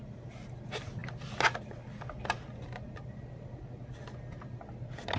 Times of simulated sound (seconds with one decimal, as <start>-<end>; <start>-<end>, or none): none